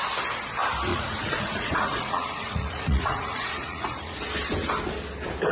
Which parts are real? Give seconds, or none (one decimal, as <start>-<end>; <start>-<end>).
0.0-0.9; 4.2-5.5